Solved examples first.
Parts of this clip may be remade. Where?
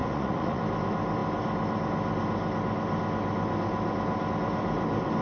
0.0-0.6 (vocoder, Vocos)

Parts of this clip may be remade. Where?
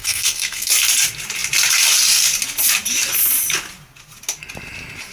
0.0-0.7 (codec, SNAC)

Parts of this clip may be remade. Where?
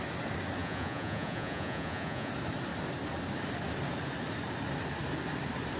0.6-2.3 (vocoder, Vocos)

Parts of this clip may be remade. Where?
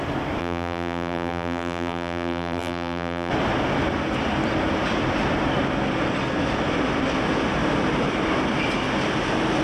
0.4-3.3 (vocoder, BigVGAN v2)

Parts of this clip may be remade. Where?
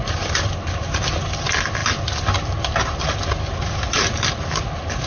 none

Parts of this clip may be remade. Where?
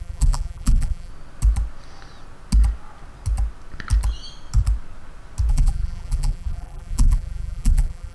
0.0-1.1 (vocoder, BigVGAN v2); 5.5-8.1